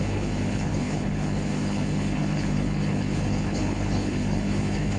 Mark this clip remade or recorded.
remade